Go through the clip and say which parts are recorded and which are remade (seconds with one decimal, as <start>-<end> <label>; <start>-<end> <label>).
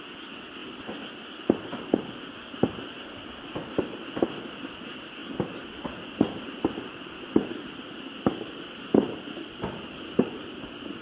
0.0-11.0 recorded